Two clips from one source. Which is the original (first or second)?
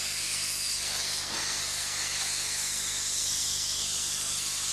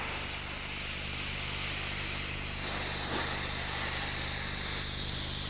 second